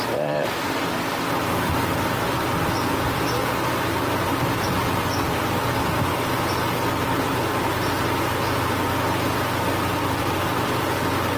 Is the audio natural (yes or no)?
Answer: yes